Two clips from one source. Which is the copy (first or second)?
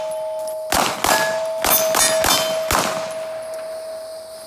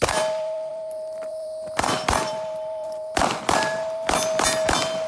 second